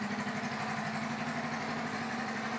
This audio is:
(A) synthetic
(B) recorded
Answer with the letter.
B